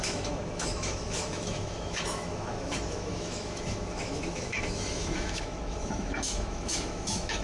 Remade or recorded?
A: remade